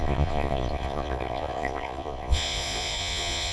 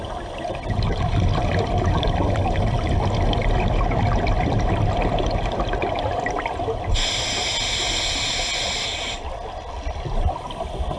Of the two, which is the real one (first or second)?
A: second